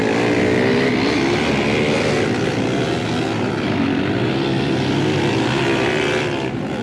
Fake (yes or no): no